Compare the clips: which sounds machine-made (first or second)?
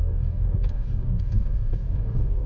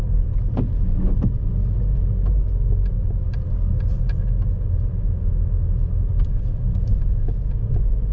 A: first